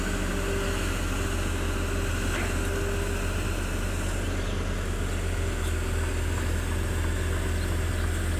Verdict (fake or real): real